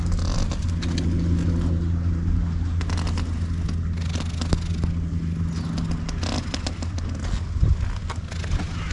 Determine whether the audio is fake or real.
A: real